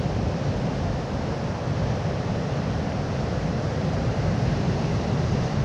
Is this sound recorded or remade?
remade